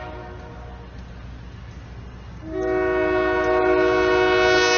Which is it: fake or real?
real